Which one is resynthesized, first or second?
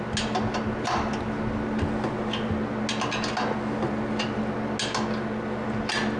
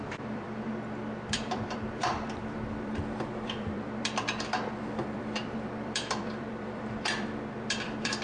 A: second